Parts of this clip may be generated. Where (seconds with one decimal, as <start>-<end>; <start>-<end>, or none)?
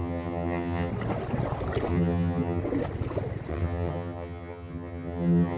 0.0-0.9; 1.9-2.6; 3.5-5.6